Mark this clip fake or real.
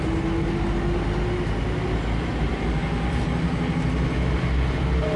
real